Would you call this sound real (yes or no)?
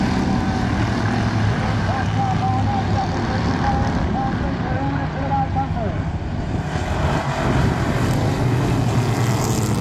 yes